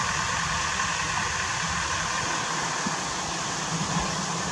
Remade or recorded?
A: recorded